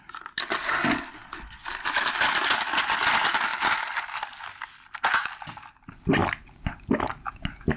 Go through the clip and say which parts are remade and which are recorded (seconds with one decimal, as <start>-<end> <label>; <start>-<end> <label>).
0.0-7.8 recorded